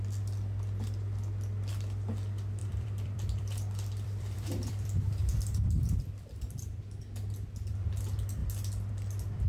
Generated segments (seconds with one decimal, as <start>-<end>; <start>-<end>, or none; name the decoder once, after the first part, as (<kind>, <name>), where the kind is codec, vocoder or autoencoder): 2.6-6.8 (vocoder, BigVGAN v2)